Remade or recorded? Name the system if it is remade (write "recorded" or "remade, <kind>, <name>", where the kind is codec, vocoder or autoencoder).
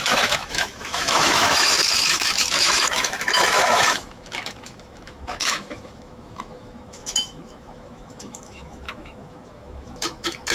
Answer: remade, autoencoder, DAC-VAE